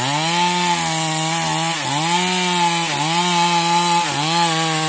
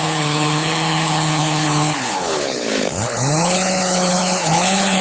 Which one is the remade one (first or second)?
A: second